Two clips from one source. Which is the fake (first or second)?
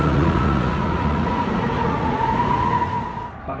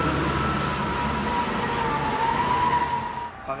first